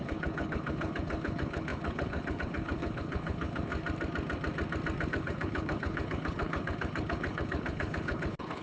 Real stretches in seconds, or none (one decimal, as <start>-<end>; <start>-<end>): 3.7-5.1